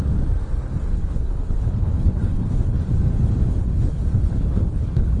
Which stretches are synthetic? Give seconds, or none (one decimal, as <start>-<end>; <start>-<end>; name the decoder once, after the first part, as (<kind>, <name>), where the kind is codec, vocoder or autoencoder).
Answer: 0.9-2.9 (codec, HILCodec); 3.6-5.2